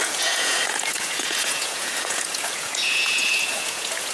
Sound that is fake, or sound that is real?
fake